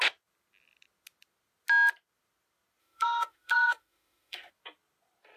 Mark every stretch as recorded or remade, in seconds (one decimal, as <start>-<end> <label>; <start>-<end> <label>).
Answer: 0.0-2.8 recorded; 2.8-4.5 remade; 4.5-5.4 recorded